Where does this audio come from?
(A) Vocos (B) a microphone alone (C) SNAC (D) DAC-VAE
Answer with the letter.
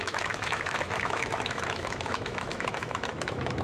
D